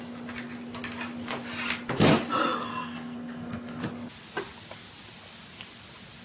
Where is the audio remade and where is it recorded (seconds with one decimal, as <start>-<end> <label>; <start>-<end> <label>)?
0.0-2.7 recorded; 2.7-3.8 remade; 3.8-6.2 recorded